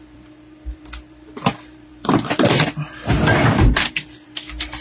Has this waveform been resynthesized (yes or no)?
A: yes